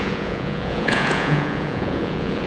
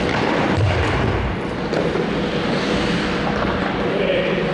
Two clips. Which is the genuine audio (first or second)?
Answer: second